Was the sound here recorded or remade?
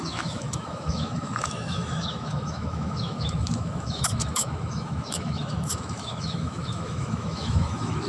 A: remade